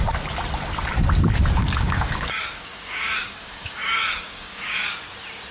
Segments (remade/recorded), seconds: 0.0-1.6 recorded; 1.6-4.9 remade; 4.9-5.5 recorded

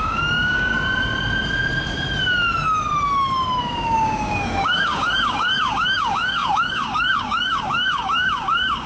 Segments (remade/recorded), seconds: 0.0-0.7 remade; 0.7-3.6 recorded; 3.6-8.9 remade

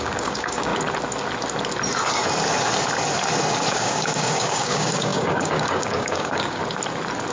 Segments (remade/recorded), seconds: 0.0-0.7 remade; 0.7-3.7 recorded; 3.7-6.6 remade; 6.6-7.3 recorded

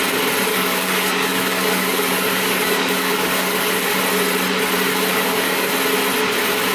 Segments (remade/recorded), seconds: 0.0-0.5 recorded; 0.5-4.0 remade; 4.0-5.1 recorded; 5.1-5.7 remade; 5.7-6.7 recorded

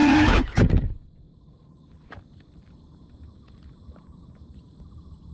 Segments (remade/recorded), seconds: 0.0-0.7 remade; 0.7-5.3 recorded

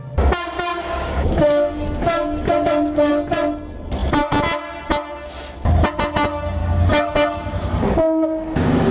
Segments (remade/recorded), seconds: 0.0-0.7 recorded; 0.7-3.1 remade; 3.1-6.6 recorded; 6.6-8.9 remade

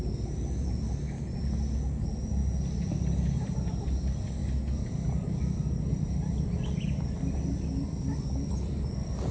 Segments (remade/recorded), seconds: 0.0-9.3 recorded